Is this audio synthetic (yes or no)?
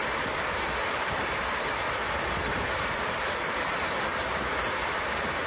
no